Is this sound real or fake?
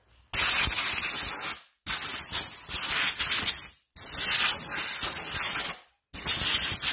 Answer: real